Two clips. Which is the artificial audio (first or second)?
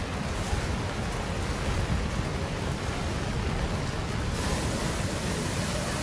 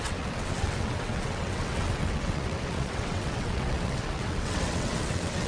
second